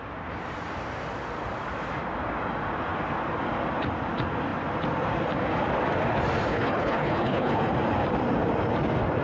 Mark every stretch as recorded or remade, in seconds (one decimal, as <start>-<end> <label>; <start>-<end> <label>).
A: 0.0-6.5 recorded; 6.5-7.6 remade; 7.6-9.2 recorded